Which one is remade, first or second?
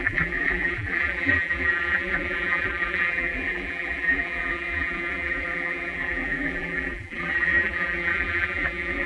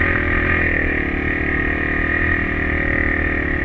first